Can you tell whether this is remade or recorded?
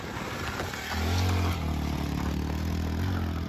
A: recorded